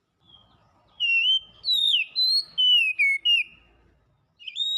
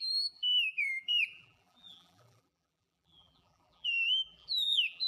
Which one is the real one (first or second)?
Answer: first